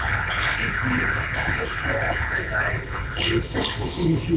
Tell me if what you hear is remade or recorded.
remade